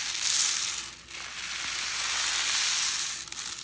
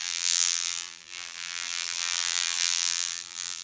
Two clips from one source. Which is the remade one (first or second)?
second